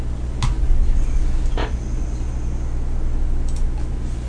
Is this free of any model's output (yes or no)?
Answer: yes